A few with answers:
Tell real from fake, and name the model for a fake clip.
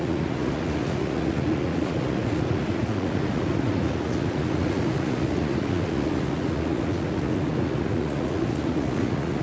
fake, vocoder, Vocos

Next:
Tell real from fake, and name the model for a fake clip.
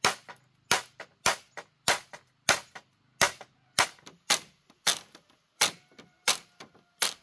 real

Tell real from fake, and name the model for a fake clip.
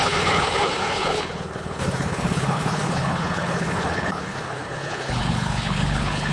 fake, codec, HILCodec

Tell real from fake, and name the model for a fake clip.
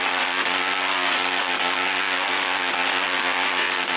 fake, vocoder, Vocos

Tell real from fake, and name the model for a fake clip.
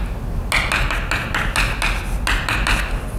real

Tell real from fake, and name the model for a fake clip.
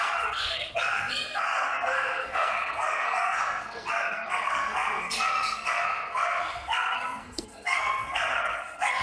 fake, codec, SNAC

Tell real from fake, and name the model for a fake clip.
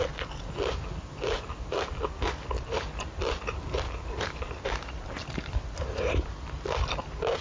real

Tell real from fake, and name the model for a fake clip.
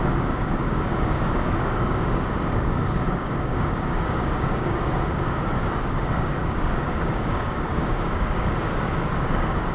fake, codec, DAC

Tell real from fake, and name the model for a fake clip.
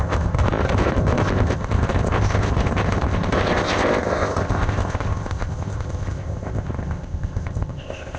fake, codec, ZipCodec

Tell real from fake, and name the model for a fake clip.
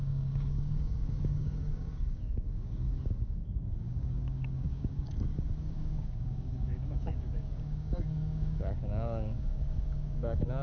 fake, codec, DAC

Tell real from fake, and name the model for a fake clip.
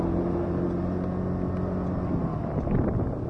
real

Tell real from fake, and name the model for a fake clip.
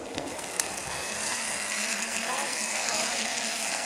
fake, codec, SNAC